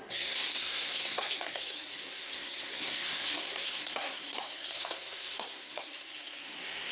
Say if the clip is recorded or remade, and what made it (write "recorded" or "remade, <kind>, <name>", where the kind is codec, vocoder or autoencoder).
remade, codec, SNAC